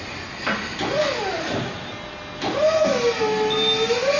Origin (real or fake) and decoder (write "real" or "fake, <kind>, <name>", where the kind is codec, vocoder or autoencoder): real